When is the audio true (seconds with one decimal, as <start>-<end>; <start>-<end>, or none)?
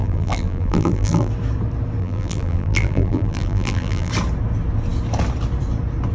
1.3-2.0; 4.1-6.1